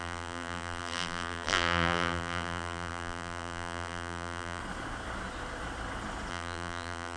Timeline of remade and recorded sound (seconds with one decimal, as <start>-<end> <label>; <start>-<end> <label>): 0.0-4.6 remade; 4.6-6.3 recorded; 6.3-7.2 remade